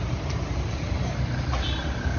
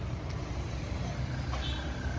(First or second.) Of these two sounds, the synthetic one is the first